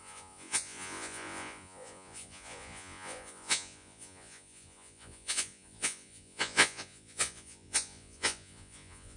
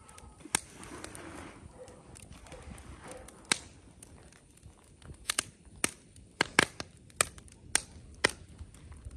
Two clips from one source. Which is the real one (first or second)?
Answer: second